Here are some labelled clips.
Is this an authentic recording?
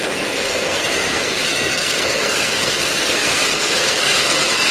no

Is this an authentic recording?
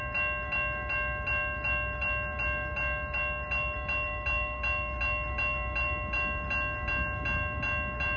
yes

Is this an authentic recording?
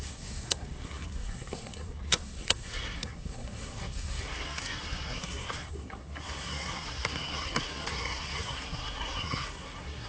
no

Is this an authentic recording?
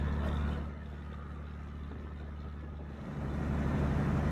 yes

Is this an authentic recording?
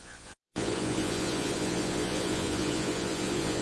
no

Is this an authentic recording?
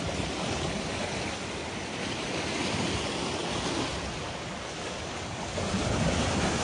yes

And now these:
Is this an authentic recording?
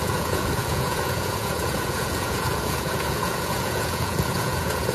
no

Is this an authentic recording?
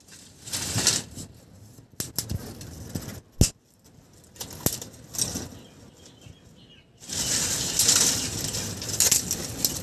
yes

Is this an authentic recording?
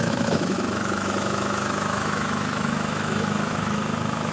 no